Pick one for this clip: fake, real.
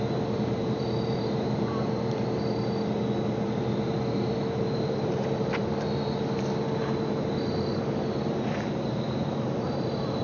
fake